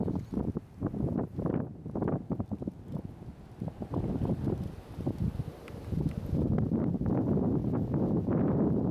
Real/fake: real